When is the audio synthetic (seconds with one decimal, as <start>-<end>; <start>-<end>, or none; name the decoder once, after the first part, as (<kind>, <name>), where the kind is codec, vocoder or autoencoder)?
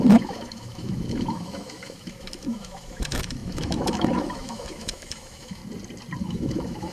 0.0-5.6 (autoencoder, DAC-VAE); 6.2-6.9